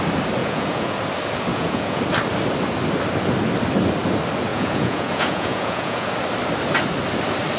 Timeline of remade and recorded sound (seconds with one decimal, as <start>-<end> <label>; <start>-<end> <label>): 0.0-0.4 recorded; 0.4-0.9 remade; 0.9-1.5 recorded; 1.5-2.0 remade; 2.0-4.5 recorded; 4.5-6.1 remade; 6.1-7.6 recorded